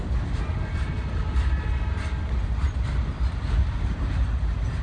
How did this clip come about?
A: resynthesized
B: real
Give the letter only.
B